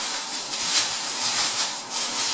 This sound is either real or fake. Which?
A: real